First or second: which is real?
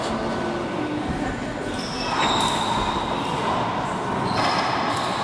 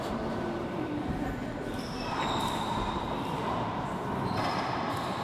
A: first